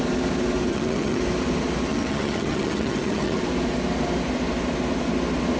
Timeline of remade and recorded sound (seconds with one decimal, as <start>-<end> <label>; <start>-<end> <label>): 0.0-0.7 recorded; 0.7-1.2 remade; 1.2-1.9 recorded; 1.9-3.4 remade; 3.4-5.6 recorded